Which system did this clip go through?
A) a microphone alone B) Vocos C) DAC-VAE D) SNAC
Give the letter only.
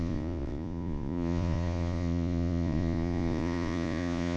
B